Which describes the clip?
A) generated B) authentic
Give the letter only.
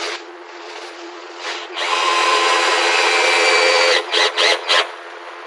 A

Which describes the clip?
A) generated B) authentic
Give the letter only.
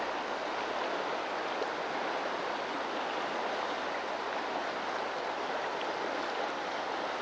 B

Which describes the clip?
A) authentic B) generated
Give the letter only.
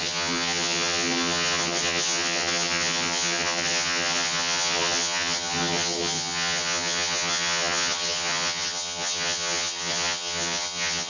B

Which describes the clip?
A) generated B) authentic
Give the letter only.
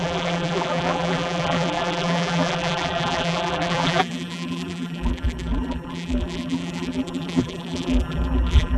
A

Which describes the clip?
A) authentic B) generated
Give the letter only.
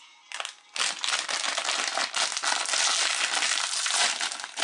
A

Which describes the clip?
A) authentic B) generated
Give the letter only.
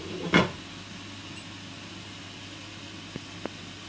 A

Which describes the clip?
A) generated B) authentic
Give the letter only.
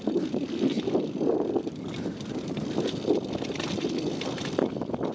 B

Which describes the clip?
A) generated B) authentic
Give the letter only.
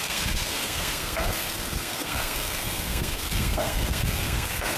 A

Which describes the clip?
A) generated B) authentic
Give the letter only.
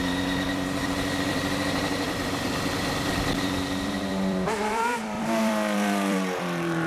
A